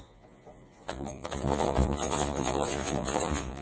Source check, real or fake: fake